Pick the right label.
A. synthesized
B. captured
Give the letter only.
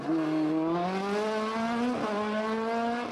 B